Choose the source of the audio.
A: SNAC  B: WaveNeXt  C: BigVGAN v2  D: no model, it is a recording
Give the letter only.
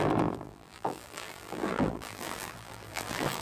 C